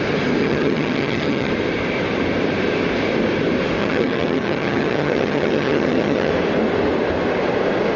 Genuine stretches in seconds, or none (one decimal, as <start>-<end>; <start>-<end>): 0.0-0.4; 1.5-3.8; 6.3-8.0